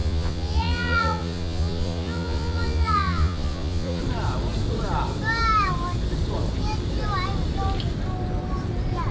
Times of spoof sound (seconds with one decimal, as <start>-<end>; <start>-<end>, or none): 0.0-4.0